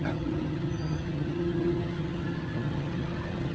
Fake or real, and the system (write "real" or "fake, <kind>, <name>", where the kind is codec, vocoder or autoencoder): fake, vocoder, HiFi-GAN